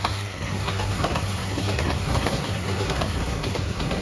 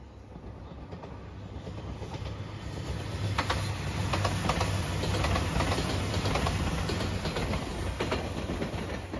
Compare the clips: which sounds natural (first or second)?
second